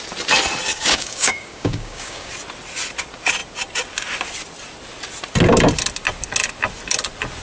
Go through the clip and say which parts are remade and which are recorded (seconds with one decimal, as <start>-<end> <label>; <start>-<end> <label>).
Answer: 0.0-0.7 recorded; 0.7-2.3 remade; 2.3-7.4 recorded

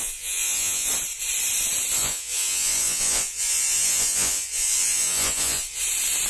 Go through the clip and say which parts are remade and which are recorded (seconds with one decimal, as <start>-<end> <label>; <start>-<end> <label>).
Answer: 0.0-0.9 remade; 0.9-2.0 recorded; 2.0-5.8 remade; 5.8-6.3 recorded

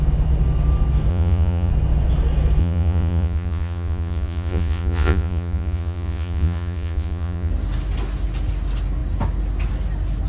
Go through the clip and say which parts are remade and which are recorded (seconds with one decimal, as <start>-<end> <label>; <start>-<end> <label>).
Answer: 0.0-1.1 recorded; 1.1-1.7 remade; 1.7-2.6 recorded; 2.6-7.5 remade; 7.5-10.3 recorded

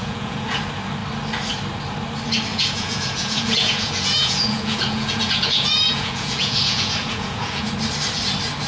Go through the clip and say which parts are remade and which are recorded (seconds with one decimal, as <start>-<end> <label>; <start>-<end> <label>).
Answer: 0.0-0.6 remade; 0.6-2.5 recorded; 2.5-7.7 remade; 7.7-8.7 recorded

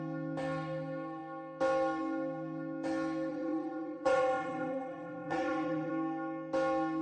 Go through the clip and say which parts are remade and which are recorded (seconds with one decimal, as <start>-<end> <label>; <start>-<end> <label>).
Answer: 0.0-3.3 recorded; 3.3-5.9 remade; 5.9-7.0 recorded

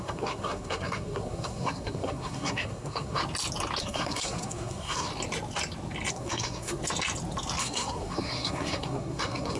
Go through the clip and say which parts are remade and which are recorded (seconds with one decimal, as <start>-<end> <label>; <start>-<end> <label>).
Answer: 0.0-3.2 remade; 3.2-3.8 recorded; 3.8-5.1 remade; 5.1-6.1 recorded; 6.1-6.8 remade; 6.8-7.6 recorded; 7.6-9.6 remade

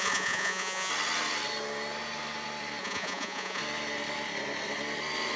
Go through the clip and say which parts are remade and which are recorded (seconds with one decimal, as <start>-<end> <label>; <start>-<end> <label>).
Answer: 0.0-0.9 remade; 0.9-2.8 recorded; 2.8-3.6 remade; 3.6-5.4 recorded

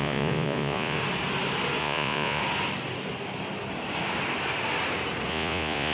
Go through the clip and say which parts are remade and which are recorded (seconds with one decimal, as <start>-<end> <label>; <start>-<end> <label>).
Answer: 0.0-1.0 remade; 1.0-1.8 recorded; 1.8-2.4 remade; 2.4-5.3 recorded; 5.3-5.9 remade